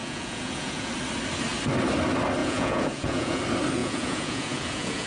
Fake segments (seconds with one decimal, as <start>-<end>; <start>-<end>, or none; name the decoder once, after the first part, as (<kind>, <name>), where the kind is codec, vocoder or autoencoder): 0.0-0.9 (vocoder, Vocos); 2.4-3.4; 3.8-5.1